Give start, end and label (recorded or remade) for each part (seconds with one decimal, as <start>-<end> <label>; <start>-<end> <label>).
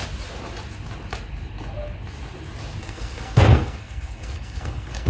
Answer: 0.0-2.8 recorded; 2.8-5.1 remade